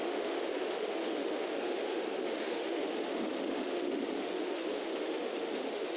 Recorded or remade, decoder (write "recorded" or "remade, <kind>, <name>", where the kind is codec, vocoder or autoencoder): remade, autoencoder, DAC-VAE